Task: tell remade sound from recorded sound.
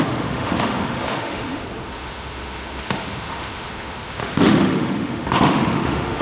remade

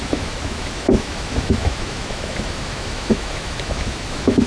remade